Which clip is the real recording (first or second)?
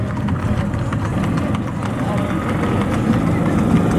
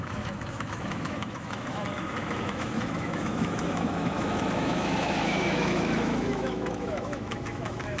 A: first